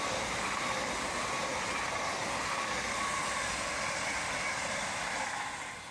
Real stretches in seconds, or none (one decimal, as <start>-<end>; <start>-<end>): 0.0-5.9